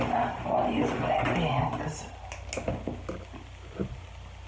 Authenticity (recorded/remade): recorded